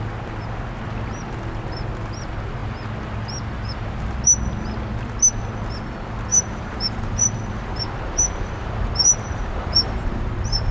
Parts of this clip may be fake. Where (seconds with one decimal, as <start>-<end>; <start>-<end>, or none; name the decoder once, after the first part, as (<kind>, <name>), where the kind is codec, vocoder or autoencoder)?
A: 6.3-10.7 (vocoder, BigVGAN v2)